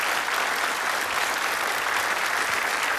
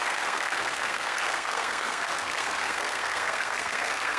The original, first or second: first